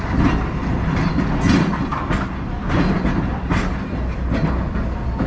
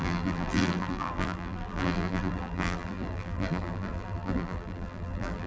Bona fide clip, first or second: first